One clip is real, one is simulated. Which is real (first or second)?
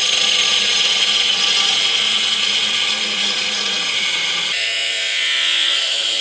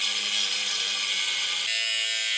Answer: second